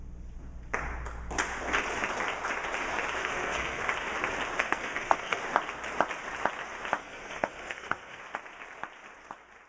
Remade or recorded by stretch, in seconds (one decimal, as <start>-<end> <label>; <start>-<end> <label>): 0.0-3.2 recorded; 3.2-3.8 remade; 3.8-4.6 recorded; 4.6-5.4 remade; 5.4-7.0 recorded; 7.0-8.2 remade; 8.2-9.7 recorded